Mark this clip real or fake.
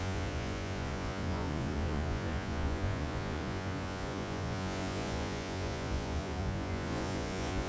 fake